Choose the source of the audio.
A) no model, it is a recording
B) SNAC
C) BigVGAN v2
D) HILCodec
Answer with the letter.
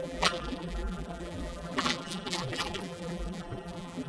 C